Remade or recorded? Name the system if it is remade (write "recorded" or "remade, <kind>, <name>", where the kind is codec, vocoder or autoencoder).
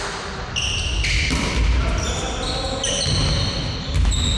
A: recorded